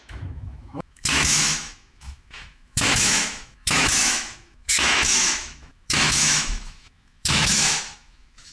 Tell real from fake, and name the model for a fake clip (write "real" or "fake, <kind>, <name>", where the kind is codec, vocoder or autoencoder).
fake, autoencoder, DAC-VAE